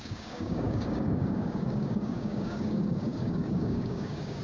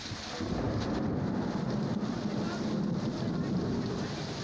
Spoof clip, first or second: first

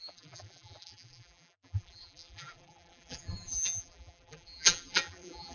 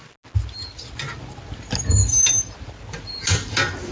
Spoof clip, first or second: first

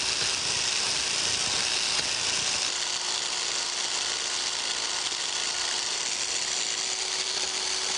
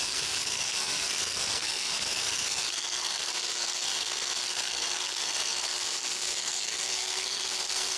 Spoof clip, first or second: second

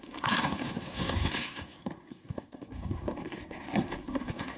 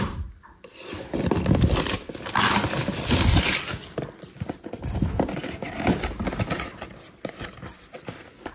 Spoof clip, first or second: first